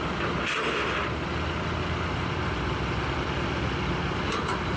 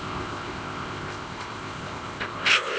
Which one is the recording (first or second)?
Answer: first